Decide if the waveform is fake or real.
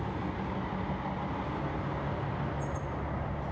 real